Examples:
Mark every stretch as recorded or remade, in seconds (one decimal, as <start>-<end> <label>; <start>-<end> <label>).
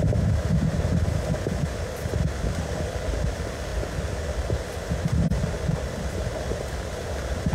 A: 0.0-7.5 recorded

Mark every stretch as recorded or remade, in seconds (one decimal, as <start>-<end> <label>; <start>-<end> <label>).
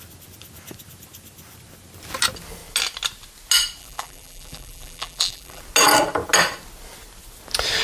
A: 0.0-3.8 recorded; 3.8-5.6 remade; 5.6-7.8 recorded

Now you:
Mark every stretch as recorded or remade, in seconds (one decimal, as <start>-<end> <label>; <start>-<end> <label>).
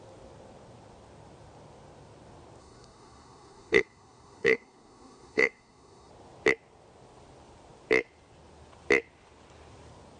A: 0.0-2.6 recorded; 2.6-6.1 remade; 6.1-10.2 recorded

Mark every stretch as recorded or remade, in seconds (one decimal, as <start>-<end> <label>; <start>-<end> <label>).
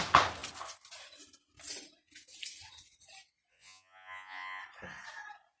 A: 0.0-3.5 recorded; 3.5-4.6 remade; 4.6-5.6 recorded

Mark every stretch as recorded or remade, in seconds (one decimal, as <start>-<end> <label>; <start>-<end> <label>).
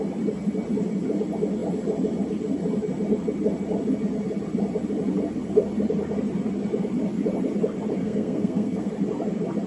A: 0.0-8.0 recorded; 8.0-8.9 remade; 8.9-9.7 recorded